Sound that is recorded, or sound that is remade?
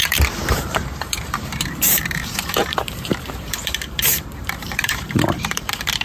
remade